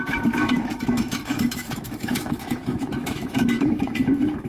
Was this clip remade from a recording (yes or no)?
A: yes